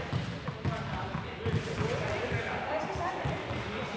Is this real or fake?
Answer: real